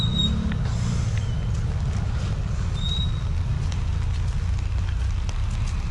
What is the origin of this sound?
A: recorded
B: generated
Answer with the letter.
A